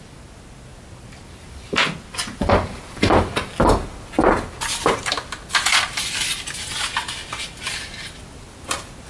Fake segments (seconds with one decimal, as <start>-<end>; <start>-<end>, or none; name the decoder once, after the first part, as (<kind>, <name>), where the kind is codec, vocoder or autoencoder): none